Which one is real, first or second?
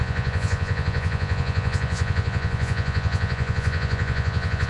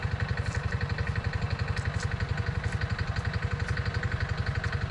second